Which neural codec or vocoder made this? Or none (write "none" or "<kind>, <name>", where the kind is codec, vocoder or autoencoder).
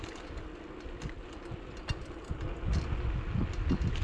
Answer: none